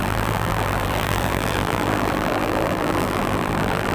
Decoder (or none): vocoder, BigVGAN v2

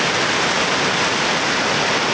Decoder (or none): none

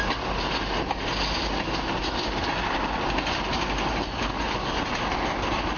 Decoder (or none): none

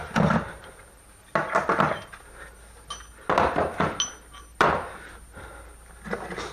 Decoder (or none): none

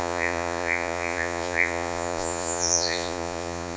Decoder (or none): vocoder, Vocos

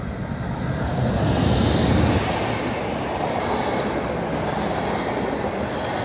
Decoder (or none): none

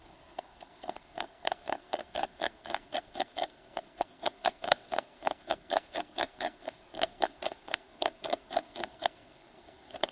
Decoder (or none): codec, SNAC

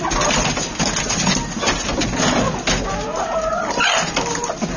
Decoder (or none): none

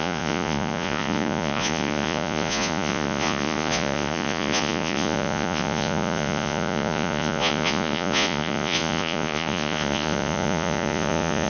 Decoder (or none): vocoder, Vocos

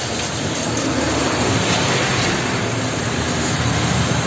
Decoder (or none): none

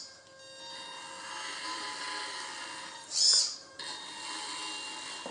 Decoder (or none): none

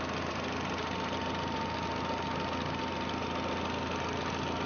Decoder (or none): none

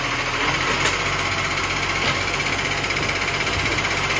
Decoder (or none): none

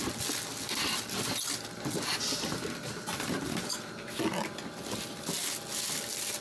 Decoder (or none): none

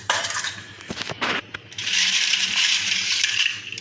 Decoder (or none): vocoder, BigVGAN v2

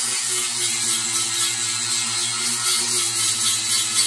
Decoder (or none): none